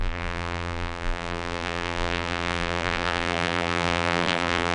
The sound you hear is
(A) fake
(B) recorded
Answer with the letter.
A